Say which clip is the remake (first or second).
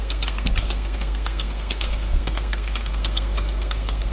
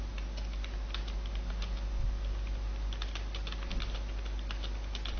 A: first